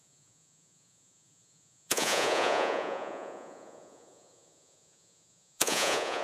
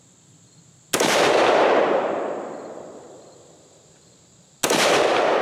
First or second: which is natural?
second